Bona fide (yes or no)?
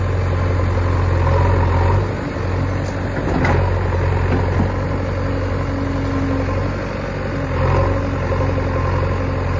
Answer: yes